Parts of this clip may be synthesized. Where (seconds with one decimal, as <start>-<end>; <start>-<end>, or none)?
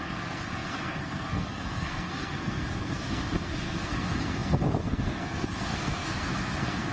0.0-6.9